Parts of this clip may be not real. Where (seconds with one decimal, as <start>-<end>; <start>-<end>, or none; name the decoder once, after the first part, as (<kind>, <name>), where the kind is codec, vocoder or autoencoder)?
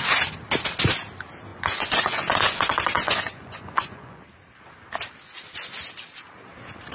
1.5-4.2 (vocoder, Vocos)